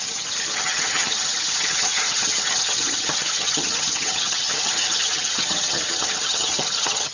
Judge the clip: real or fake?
fake